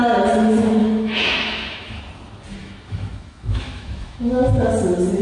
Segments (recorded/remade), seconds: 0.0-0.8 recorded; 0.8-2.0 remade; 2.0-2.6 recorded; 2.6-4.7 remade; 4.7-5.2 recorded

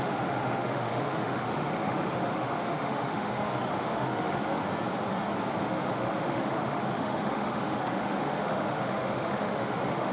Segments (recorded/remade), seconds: 0.0-4.6 remade; 4.6-5.6 recorded; 5.6-10.1 remade

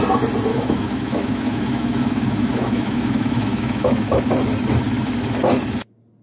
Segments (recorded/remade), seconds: 0.0-0.5 recorded; 0.5-4.2 remade; 4.2-6.2 recorded

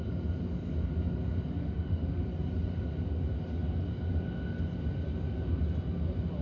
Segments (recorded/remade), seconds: 0.0-1.6 recorded; 1.6-2.2 remade; 2.2-6.4 recorded